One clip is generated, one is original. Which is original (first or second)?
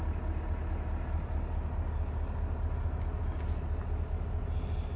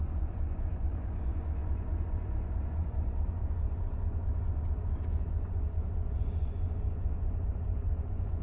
first